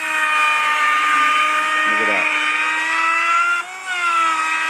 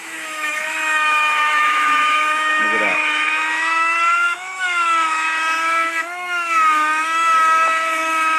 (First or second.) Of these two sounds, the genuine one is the first